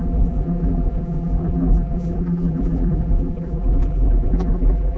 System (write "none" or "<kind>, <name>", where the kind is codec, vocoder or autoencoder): vocoder, BigVGAN v2